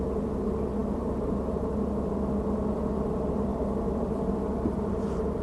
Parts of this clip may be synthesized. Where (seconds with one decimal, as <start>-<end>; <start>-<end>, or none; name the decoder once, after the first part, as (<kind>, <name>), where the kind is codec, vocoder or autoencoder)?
none